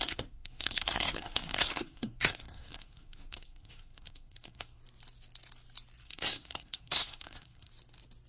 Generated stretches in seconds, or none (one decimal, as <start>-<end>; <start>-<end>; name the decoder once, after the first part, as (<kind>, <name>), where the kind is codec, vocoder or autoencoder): 0.0-4.8 (codec, SNAC); 6.0-7.7